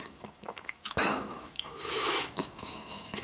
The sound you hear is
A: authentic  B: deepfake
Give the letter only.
B